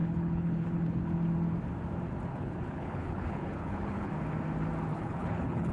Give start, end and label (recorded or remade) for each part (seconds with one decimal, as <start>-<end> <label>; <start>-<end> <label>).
0.0-1.0 remade; 1.0-2.3 recorded; 2.3-4.1 remade; 4.1-4.9 recorded; 4.9-5.7 remade